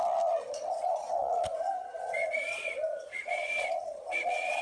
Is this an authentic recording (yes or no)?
no